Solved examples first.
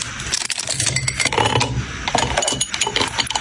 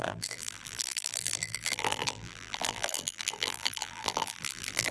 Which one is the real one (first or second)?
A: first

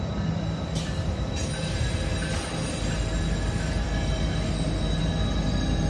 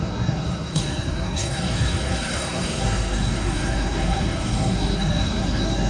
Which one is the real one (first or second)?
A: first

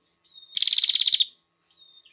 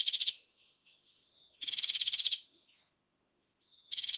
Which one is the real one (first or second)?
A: first